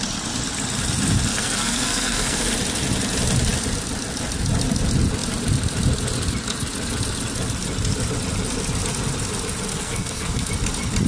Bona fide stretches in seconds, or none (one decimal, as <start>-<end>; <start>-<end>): 0.0-1.3; 2.5-9.7; 10.5-11.1